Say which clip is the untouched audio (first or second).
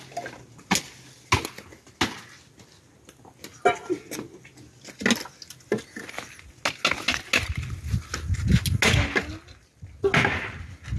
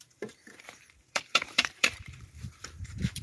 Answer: first